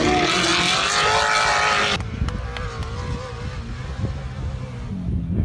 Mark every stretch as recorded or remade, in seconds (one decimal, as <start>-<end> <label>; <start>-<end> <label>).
0.0-5.4 recorded